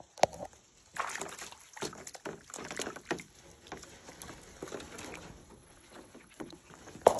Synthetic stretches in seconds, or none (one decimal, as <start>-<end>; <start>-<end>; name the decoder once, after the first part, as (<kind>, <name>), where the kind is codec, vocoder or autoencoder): 5.4-6.7 (vocoder, WaveNeXt)